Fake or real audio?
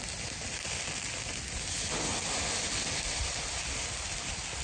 real